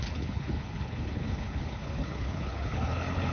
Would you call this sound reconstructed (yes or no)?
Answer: yes